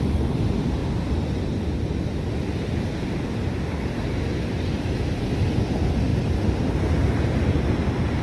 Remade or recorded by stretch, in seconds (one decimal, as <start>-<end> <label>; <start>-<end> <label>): 0.0-8.2 recorded